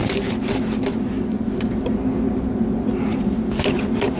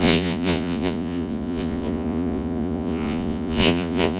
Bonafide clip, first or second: first